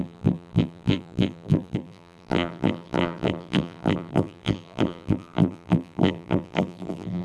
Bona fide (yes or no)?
no